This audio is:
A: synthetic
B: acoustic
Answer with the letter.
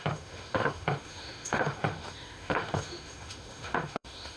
A